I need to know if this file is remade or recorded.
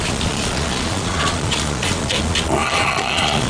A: remade